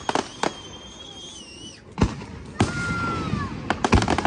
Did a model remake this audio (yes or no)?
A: no